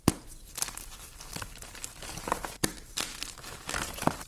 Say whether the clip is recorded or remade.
recorded